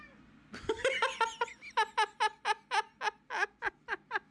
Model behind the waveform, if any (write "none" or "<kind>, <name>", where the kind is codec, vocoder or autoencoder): none